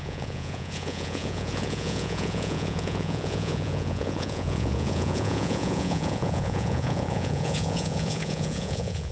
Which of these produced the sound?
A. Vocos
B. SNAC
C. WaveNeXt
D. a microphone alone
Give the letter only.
A